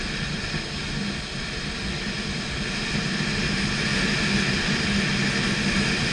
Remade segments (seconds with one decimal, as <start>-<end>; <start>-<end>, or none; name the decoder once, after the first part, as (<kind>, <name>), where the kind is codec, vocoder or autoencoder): none